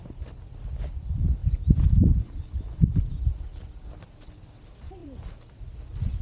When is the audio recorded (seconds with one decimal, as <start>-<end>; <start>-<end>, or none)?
0.0-5.0; 5.8-6.2